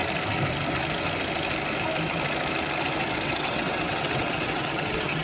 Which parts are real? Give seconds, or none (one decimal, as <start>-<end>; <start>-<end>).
0.0-3.1